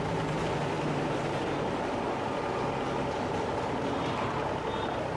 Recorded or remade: recorded